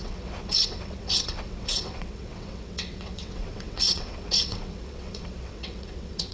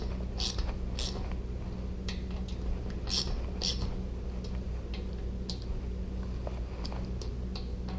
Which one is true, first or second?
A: second